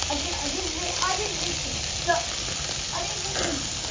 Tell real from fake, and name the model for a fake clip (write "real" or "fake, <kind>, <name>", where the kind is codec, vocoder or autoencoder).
real